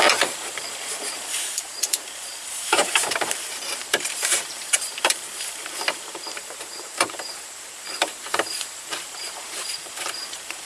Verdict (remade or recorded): remade